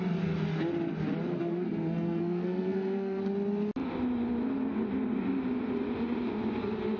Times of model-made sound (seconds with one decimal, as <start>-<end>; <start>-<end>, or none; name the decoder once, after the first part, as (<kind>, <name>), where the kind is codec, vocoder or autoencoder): 1.3-3.2 (codec, SNAC)